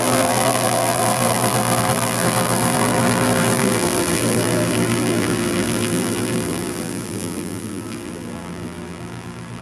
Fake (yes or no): yes